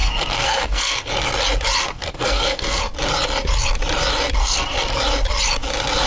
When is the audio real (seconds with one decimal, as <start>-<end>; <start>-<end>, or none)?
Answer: 1.1-1.8; 2.8-4.4; 5.0-6.1